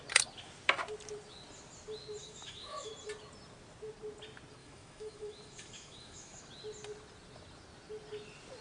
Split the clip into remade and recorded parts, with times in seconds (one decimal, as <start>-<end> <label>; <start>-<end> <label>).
0.0-2.2 recorded; 2.2-2.9 remade; 2.9-4.6 recorded; 4.6-6.4 remade; 6.4-8.6 recorded